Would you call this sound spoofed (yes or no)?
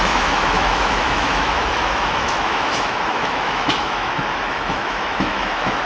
yes